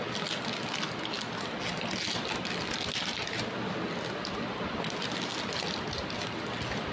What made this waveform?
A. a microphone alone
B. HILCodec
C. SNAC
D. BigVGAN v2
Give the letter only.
A